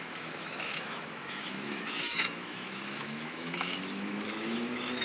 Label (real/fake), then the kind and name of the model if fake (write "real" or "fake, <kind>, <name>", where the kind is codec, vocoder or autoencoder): fake, autoencoder, DAC-VAE